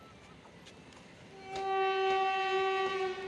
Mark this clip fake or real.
real